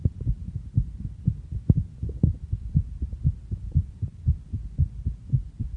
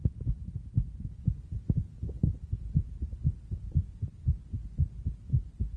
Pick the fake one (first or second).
first